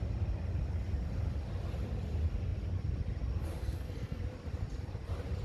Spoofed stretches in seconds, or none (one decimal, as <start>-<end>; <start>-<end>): 3.6-4.2